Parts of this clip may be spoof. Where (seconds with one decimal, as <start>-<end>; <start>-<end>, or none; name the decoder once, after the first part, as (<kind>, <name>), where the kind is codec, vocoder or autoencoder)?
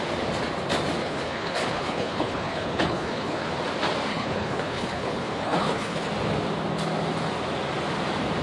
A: 1.0-3.5 (codec, HILCodec); 4.1-6.1